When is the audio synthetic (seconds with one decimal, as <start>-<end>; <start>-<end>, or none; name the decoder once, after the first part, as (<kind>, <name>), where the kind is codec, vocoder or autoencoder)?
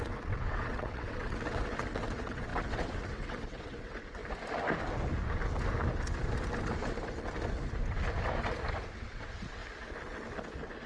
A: 0.0-4.2 (vocoder, WaveNeXt); 8.8-9.6